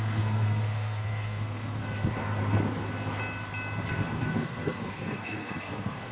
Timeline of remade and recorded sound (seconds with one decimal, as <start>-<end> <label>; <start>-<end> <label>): 0.0-1.8 remade; 1.8-3.9 recorded; 3.9-6.1 remade